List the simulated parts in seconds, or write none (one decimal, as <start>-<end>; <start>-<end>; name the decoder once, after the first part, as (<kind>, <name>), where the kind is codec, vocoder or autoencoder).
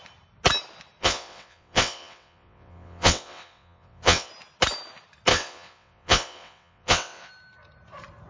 1.0-4.3 (vocoder, WaveNeXt); 5.3-7.3